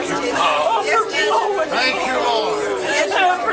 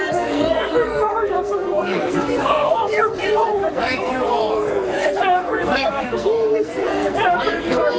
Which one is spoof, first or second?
second